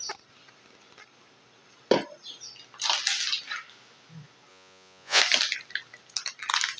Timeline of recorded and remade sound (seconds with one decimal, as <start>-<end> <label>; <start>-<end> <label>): 0.0-4.5 recorded; 4.5-5.2 remade; 5.2-6.8 recorded